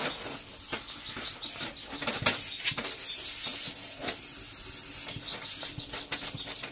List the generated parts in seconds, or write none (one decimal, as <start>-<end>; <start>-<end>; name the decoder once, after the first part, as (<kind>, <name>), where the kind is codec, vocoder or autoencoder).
none